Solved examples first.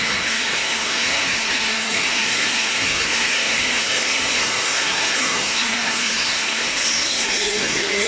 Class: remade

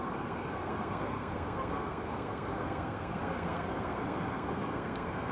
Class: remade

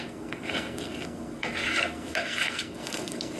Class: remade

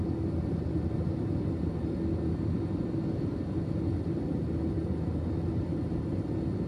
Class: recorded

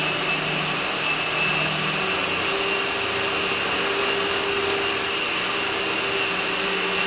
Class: recorded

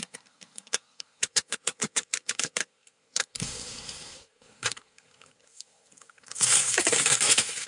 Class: remade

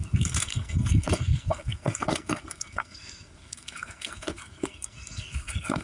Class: remade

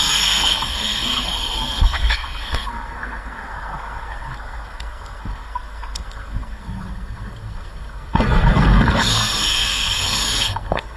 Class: remade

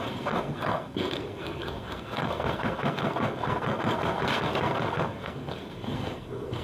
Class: remade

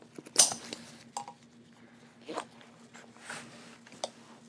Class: recorded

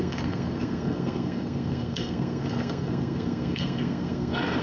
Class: remade